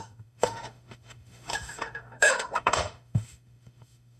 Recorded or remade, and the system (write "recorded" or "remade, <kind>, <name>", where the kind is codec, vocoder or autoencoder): remade, autoencoder, DAC-VAE